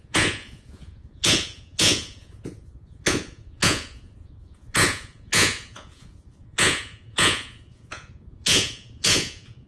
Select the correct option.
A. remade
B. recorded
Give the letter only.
A